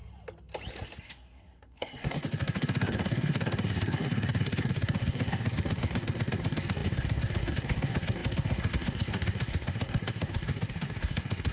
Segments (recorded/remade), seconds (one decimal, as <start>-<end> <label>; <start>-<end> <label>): 0.0-1.0 recorded; 1.0-11.5 remade